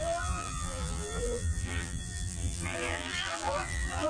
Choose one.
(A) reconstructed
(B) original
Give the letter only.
A